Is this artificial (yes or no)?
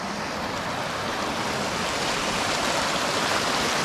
no